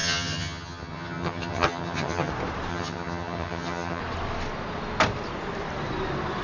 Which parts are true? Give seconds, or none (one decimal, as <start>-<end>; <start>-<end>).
2.3-2.7; 4.0-6.4